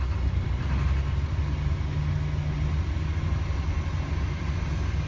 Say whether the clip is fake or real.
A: real